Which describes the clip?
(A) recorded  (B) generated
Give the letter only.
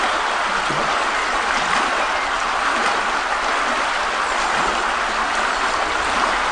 A